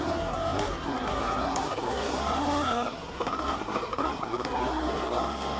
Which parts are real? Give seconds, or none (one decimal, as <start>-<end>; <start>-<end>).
none

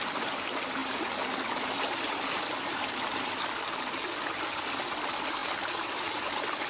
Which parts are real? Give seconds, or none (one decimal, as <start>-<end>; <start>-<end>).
0.0-6.7

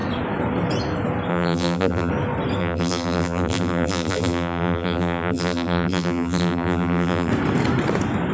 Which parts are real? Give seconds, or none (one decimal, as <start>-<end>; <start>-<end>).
0.0-1.3; 2.1-2.6; 7.3-8.3